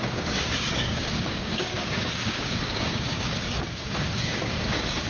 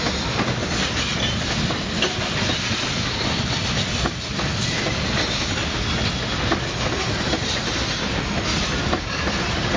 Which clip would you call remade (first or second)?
first